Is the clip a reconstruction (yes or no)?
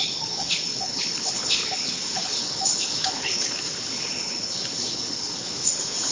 yes